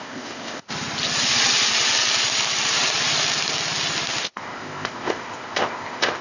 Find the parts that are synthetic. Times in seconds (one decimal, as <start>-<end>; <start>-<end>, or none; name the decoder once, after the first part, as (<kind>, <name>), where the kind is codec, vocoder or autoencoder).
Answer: 0.0-0.7 (codec, ZipCodec); 4.2-6.2

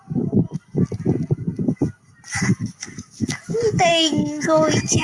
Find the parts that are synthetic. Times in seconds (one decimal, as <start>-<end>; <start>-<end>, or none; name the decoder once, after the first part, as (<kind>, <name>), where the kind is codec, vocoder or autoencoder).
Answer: 2.5-3.1 (codec, DAC); 3.9-4.6

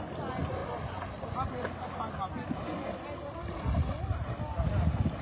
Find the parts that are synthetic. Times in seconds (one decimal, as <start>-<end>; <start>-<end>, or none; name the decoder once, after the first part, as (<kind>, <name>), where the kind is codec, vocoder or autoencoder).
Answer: none

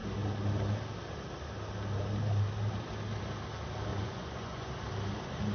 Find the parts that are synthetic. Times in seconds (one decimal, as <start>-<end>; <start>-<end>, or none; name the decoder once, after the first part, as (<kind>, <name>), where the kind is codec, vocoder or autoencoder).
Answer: 3.9-4.7 (vocoder, Vocos)

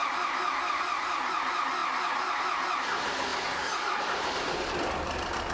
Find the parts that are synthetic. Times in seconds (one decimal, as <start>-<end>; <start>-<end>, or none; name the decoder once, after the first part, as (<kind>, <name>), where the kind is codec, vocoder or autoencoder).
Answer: 0.0-1.8 (vocoder, BigVGAN v2); 2.8-3.3; 4.4-5.5

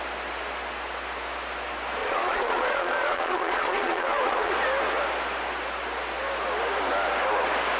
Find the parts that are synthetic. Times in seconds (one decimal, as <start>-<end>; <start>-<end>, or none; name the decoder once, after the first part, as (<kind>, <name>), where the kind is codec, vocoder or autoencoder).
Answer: 2.0-4.5 (vocoder, Vocos)

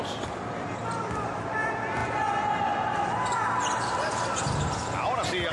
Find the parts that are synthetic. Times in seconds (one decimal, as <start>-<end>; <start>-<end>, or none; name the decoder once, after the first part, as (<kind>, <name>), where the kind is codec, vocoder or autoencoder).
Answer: none

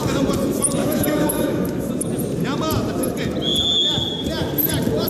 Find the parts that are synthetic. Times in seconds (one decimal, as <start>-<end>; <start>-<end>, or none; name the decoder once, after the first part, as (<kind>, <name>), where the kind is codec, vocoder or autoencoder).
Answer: 0.8-1.9 (autoencoder, DAC-VAE)